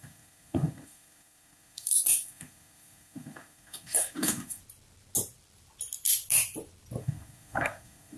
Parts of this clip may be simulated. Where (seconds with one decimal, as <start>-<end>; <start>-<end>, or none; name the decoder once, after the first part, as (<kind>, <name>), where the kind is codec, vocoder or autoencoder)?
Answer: 0.0-4.6 (codec, SNAC); 7.0-8.2